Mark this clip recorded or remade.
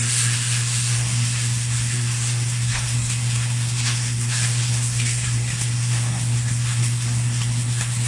remade